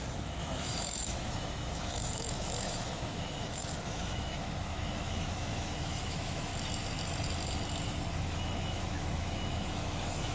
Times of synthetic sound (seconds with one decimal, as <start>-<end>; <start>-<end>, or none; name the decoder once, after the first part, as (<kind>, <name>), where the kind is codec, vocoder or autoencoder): 0.0-6.5 (autoencoder, DAC-VAE); 8.1-10.3